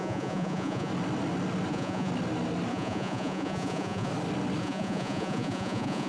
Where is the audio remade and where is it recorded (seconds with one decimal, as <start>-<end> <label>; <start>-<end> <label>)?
0.0-0.9 remade; 0.9-1.7 recorded; 1.7-2.1 remade; 2.1-2.7 recorded; 2.7-4.1 remade; 4.1-4.6 recorded; 4.6-6.1 remade